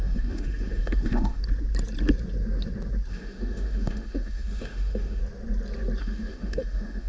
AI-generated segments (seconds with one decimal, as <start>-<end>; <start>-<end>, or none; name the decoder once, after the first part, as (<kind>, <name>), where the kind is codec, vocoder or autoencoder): 0.0-1.4 (autoencoder, DAC-VAE); 3.1-5.2; 6.0-7.1